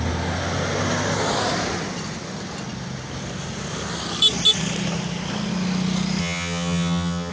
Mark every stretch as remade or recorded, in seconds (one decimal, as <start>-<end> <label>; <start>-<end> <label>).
0.0-6.2 recorded; 6.2-7.3 remade